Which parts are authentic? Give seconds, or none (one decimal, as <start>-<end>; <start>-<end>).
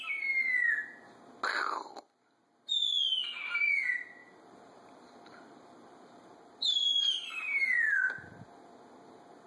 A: 0.0-4.2; 7.6-9.5